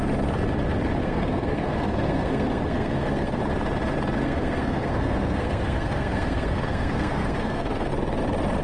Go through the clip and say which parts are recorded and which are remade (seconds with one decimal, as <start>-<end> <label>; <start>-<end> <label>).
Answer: 0.0-1.0 recorded; 1.0-3.4 remade; 3.4-4.2 recorded; 4.2-7.9 remade; 7.9-8.6 recorded